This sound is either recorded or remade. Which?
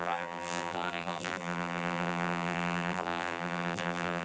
remade